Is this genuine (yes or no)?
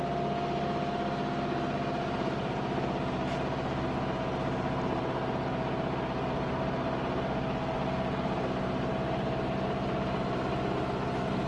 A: yes